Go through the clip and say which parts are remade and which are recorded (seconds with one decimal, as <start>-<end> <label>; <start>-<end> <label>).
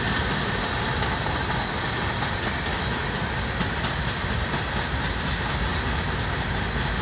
0.0-2.7 recorded; 2.7-3.2 remade; 3.2-7.0 recorded